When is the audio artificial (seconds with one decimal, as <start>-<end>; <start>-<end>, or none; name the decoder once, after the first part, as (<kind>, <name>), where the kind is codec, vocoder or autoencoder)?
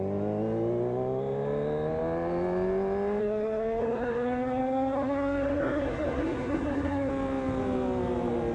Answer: 3.2-7.1 (codec, SNAC)